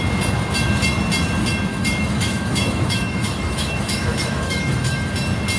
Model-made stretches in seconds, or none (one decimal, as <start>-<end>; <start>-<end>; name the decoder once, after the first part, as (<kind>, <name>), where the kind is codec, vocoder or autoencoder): 1.7-5.1 (autoencoder, DAC-VAE)